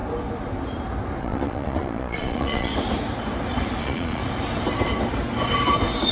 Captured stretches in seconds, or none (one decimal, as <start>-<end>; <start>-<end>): 0.0-1.2; 2.7-3.8; 4.2-6.1